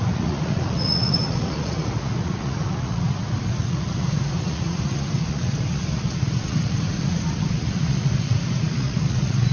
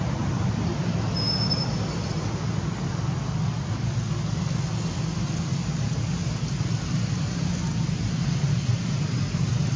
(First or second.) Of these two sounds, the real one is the second